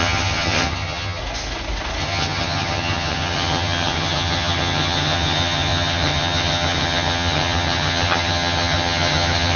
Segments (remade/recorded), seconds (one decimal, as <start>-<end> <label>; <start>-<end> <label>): 0.0-1.2 remade; 1.2-2.0 recorded; 2.0-9.6 remade